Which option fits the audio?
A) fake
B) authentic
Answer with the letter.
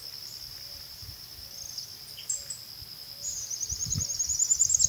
B